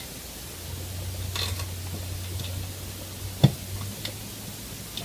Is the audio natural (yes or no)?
yes